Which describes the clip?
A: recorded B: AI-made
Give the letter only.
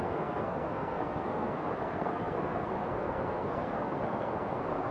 B